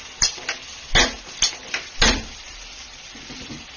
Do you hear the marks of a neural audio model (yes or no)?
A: no